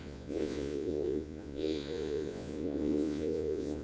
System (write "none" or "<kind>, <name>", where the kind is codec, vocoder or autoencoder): vocoder, Vocos